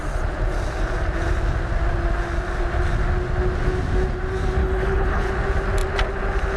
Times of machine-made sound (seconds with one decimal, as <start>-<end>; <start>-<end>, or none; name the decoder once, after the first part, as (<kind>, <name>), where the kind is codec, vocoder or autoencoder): 4.6-5.3 (codec, HILCodec)